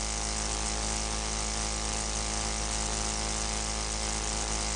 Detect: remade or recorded recorded